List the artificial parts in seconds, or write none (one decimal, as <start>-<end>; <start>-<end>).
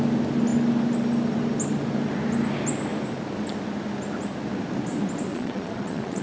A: 5.3-6.2